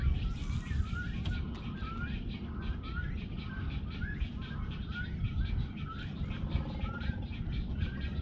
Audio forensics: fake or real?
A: real